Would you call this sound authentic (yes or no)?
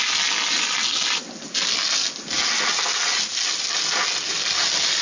yes